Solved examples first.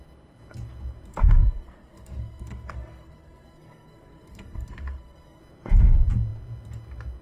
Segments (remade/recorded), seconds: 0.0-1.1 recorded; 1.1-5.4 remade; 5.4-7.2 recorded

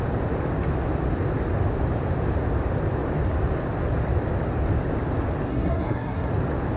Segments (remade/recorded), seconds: 0.0-5.5 recorded; 5.5-6.3 remade; 6.3-6.8 recorded

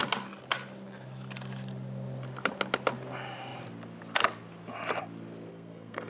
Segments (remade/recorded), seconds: 0.0-5.5 recorded; 5.5-6.1 remade

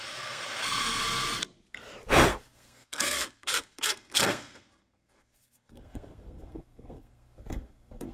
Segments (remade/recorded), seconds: 0.0-1.0 remade; 1.0-2.3 recorded; 2.3-8.1 remade